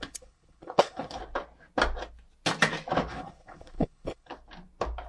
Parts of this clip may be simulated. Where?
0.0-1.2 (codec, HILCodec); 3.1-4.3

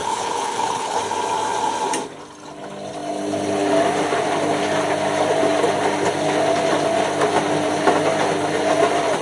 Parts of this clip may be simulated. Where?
0.0-1.0 (codec, HILCodec)

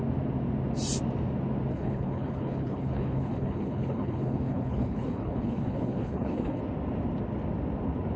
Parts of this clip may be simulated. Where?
1.7-6.6 (codec, HILCodec)

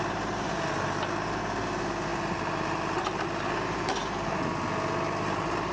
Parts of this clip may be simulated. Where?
none

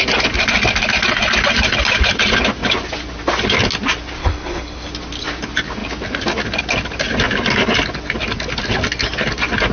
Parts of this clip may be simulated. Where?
4.2-4.9 (codec, HILCodec)

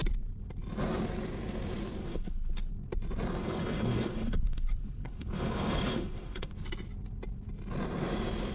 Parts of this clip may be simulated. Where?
2.0-2.7 (codec, HILCodec); 3.4-6.5